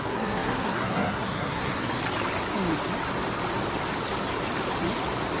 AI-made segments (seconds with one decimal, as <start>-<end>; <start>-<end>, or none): 0.0-2.0